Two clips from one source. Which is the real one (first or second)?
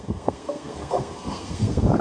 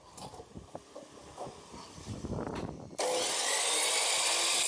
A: second